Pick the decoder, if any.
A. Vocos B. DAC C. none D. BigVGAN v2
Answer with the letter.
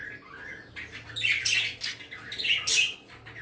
C